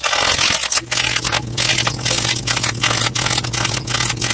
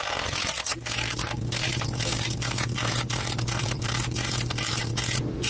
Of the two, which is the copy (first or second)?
second